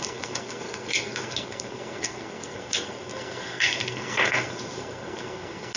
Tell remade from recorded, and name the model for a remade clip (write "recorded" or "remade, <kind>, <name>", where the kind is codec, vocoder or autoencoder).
remade, codec, SNAC